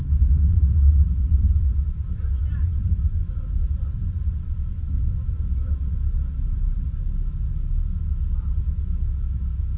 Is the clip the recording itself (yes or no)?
yes